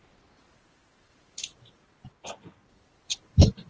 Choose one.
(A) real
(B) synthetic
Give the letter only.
B